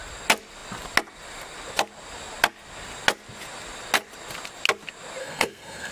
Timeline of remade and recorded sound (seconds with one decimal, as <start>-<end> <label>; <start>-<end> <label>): 0.0-5.2 recorded; 5.2-5.9 remade